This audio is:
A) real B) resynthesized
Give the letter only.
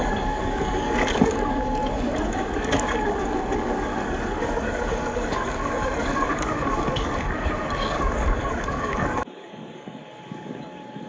B